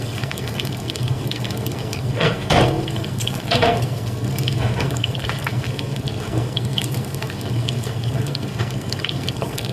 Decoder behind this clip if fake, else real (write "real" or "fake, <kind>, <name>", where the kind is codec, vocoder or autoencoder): fake, codec, SNAC